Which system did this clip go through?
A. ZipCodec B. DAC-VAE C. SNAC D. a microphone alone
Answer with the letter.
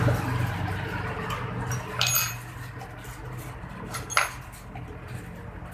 D